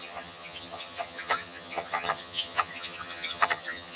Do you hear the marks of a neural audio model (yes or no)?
yes